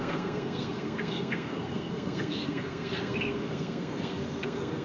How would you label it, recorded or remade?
remade